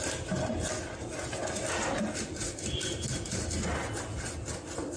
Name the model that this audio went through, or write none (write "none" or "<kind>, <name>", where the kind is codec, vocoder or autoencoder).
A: none